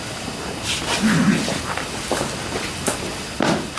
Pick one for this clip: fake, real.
real